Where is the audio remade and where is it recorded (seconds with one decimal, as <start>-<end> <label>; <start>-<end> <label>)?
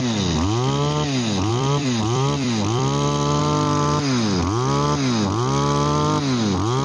0.0-1.5 recorded; 1.5-3.4 remade; 3.4-6.8 recorded